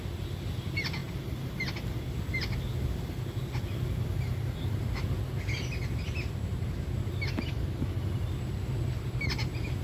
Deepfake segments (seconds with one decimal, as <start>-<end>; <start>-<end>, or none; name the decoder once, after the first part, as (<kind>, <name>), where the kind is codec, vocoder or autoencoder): none